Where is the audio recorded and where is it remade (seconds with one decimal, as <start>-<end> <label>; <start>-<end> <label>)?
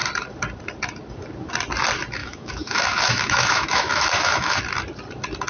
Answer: 0.0-2.2 recorded; 2.2-4.6 remade; 4.6-5.5 recorded